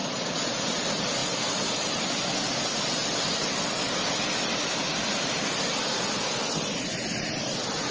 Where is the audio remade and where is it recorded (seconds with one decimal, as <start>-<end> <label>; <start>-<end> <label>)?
0.0-0.5 remade; 0.5-7.9 recorded